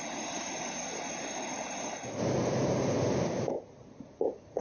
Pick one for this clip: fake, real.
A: real